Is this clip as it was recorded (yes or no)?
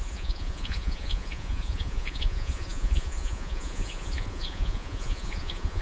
no